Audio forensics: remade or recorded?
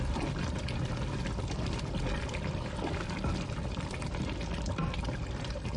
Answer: remade